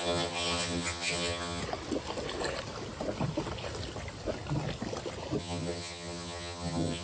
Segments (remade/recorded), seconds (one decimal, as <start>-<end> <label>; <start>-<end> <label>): 0.0-1.6 remade; 1.6-5.4 recorded; 5.4-7.0 remade